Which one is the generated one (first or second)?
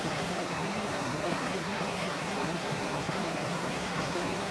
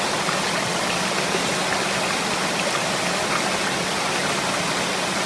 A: first